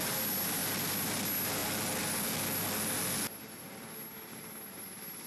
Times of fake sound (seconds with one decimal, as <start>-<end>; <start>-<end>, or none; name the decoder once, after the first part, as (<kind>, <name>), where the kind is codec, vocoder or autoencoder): none